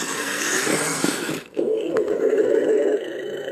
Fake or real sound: fake